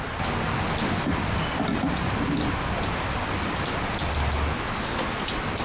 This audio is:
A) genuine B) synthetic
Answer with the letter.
A